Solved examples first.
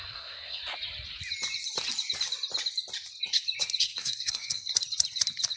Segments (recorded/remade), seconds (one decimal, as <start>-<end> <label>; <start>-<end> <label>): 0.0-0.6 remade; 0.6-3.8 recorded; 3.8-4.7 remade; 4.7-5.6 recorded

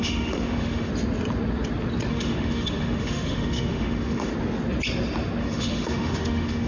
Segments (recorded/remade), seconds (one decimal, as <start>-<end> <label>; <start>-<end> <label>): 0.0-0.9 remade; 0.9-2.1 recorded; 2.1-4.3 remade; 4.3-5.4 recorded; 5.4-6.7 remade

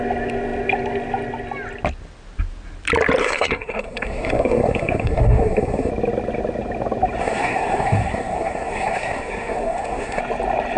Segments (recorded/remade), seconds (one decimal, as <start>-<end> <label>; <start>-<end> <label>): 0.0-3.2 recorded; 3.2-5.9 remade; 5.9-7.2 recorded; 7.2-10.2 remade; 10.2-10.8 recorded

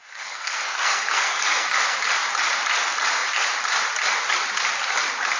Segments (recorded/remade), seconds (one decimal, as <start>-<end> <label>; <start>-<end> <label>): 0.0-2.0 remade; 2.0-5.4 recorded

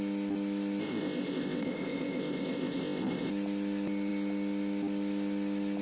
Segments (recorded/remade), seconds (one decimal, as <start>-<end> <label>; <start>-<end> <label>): 0.0-0.8 recorded; 0.8-3.3 remade; 3.3-5.8 recorded

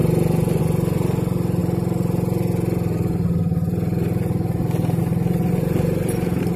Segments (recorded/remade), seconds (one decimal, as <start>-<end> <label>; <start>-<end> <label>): 0.0-6.6 recorded

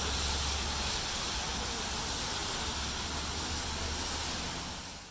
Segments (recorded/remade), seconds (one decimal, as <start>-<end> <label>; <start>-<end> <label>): 0.0-5.1 recorded